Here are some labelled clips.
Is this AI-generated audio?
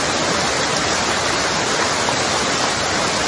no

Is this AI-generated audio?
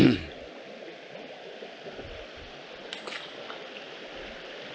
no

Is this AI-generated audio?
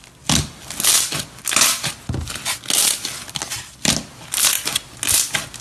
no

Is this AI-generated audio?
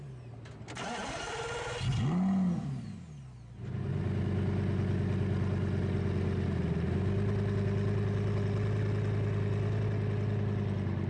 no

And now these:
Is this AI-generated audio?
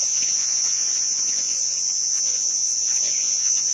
yes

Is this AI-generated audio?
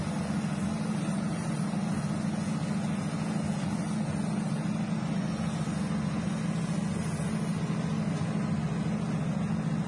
no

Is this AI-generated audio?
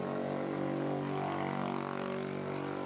no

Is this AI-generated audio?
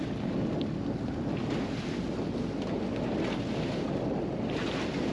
no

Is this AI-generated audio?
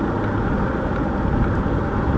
no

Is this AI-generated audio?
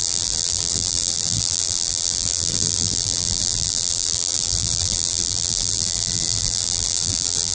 yes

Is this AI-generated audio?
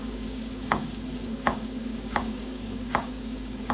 yes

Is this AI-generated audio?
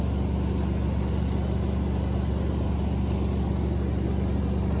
no